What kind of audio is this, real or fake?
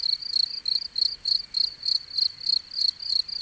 real